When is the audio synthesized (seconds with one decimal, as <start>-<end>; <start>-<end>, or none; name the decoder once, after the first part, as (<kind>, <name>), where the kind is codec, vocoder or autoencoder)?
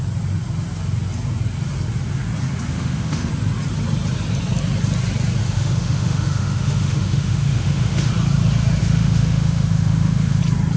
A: 2.7-3.3 (autoencoder, DAC-VAE); 5.4-8.1; 8.8-10.4